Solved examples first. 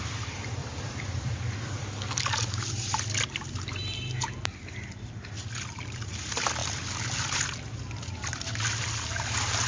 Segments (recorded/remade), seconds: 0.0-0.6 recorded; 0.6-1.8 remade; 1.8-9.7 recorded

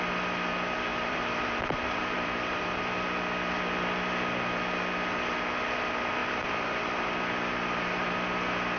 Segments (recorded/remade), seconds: 0.0-0.9 recorded; 0.9-2.9 remade; 2.9-6.2 recorded; 6.2-6.8 remade; 6.8-8.8 recorded

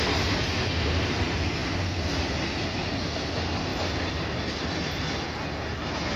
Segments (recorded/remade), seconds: 0.0-6.2 recorded

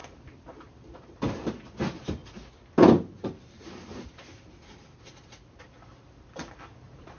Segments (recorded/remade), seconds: 0.0-2.2 remade; 2.2-3.5 recorded; 3.5-7.2 remade

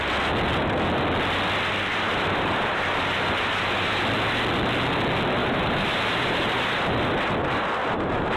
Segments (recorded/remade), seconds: 0.0-1.9 recorded; 1.9-4.0 remade; 4.0-5.4 recorded; 5.4-6.8 remade; 6.8-7.8 recorded; 7.8-8.4 remade

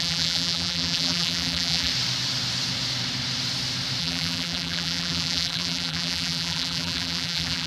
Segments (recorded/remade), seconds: 0.0-1.9 remade; 1.9-4.0 recorded; 4.0-7.7 remade